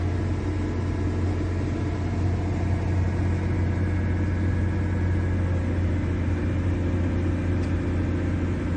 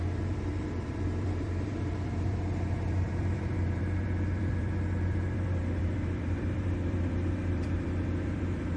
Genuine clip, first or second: first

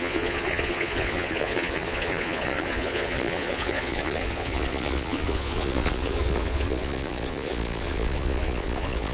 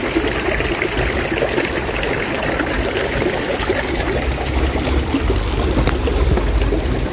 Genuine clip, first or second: second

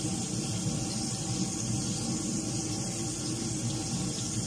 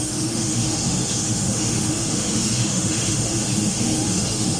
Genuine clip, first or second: first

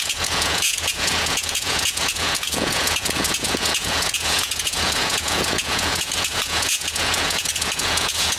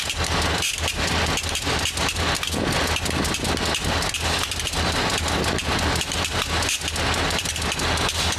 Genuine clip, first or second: second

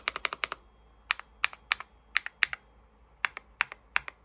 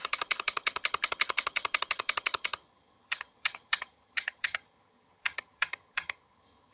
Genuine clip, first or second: first